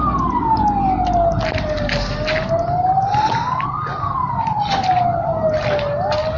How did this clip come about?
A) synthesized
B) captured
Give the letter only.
B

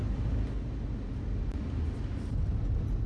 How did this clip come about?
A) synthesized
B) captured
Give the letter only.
B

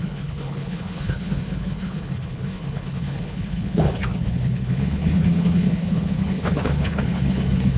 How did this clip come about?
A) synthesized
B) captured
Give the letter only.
A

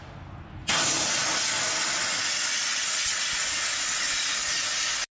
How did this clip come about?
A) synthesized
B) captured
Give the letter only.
B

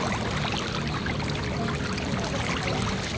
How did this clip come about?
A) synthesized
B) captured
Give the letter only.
B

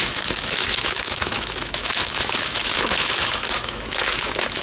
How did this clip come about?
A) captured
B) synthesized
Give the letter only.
B